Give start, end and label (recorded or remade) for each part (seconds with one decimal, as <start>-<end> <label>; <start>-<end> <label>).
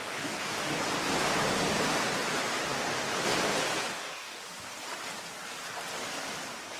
0.0-0.8 remade; 0.8-3.9 recorded; 3.9-4.4 remade; 4.4-6.8 recorded